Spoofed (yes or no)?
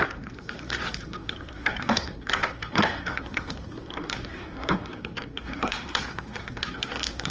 yes